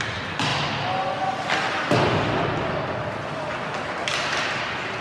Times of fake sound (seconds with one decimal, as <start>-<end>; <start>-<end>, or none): none